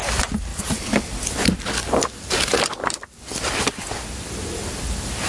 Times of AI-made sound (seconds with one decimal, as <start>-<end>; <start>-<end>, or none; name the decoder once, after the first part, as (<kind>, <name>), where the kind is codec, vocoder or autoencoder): none